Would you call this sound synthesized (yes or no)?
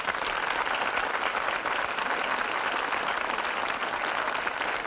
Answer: no